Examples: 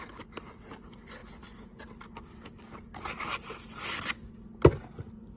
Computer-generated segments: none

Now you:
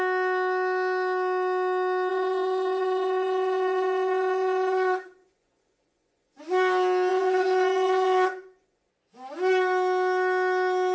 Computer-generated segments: 2.1-6.4 (vocoder, Vocos); 7.1-8.9

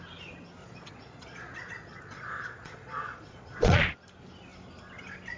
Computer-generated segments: 0.6-3.8 (vocoder, Vocos)

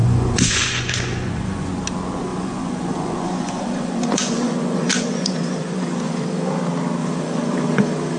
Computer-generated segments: 0.0-1.7 (vocoder, Vocos); 2.3-6.6; 7.0-8.2

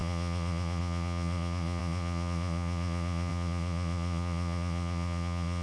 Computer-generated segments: 0.0-5.6 (vocoder, Vocos)